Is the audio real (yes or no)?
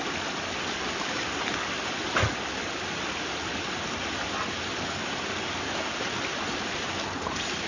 yes